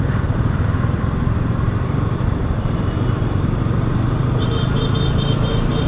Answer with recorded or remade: remade